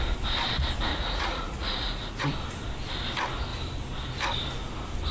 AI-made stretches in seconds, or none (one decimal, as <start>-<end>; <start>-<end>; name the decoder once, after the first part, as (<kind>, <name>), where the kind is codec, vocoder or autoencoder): 0.9-2.3 (vocoder, Vocos)